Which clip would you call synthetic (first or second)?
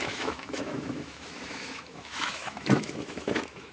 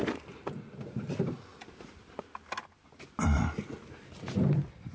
first